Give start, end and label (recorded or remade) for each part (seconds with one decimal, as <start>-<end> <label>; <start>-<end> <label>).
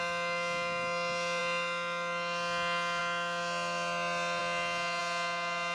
0.0-5.7 recorded